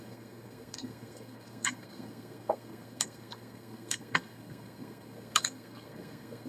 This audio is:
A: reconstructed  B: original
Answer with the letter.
A